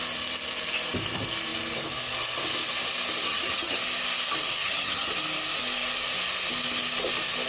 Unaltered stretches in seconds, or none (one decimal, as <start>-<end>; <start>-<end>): 0.0-3.3; 3.8-4.6; 5.1-7.5